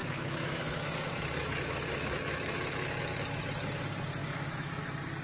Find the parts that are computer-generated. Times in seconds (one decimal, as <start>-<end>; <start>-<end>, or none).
0.0-3.0; 4.2-4.8